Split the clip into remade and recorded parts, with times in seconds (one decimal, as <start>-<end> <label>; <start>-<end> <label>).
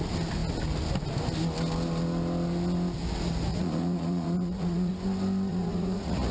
0.0-3.5 recorded; 3.5-4.9 remade; 4.9-5.5 recorded; 5.5-6.3 remade